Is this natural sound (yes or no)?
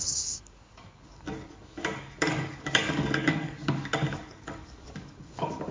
no